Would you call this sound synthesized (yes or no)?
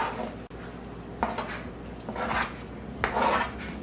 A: no